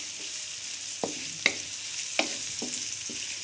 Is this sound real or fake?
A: real